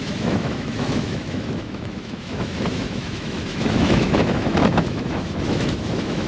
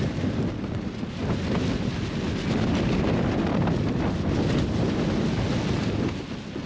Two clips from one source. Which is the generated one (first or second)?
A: first